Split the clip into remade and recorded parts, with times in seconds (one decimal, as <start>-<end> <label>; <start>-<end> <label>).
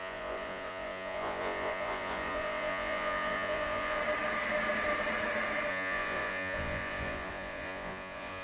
0.0-4.0 remade; 4.0-5.7 recorded; 5.7-8.4 remade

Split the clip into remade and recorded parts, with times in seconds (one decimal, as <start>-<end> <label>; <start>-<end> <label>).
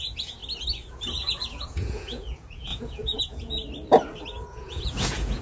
0.0-0.4 remade; 0.4-0.9 recorded; 0.9-3.6 remade; 3.6-4.5 recorded; 4.5-5.4 remade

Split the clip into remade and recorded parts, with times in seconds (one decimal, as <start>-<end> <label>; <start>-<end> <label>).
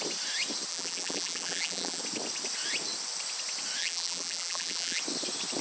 0.0-0.7 recorded; 0.7-2.0 remade; 2.0-3.8 recorded; 3.8-5.0 remade; 5.0-5.6 recorded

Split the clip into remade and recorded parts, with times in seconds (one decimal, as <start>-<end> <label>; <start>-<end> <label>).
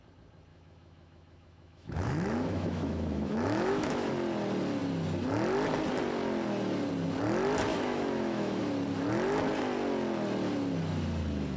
0.0-0.5 recorded; 0.5-4.1 remade; 4.1-7.7 recorded; 7.7-8.6 remade; 8.6-11.6 recorded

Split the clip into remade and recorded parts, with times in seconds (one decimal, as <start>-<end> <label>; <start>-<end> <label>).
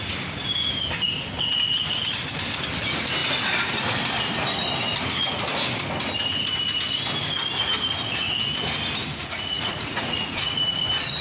0.0-9.0 recorded; 9.0-10.6 remade; 10.6-11.2 recorded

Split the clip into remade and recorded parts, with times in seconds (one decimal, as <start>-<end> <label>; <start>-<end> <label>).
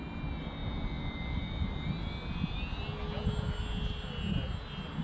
0.0-5.0 recorded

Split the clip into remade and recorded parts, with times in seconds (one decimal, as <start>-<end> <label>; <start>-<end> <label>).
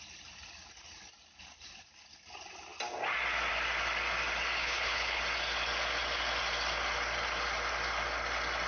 0.0-4.6 recorded; 4.6-5.2 remade; 5.2-8.7 recorded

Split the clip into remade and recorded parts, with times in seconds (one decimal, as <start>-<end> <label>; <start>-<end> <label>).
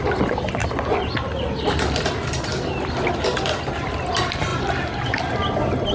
0.0-5.9 recorded